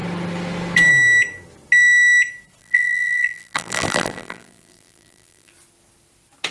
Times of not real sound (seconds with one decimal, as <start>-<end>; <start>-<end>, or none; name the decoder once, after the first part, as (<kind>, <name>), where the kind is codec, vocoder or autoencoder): 2.6-5.5 (vocoder, BigVGAN v2)